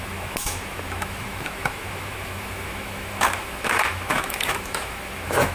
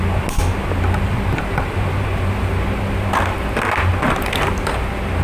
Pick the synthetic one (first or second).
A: first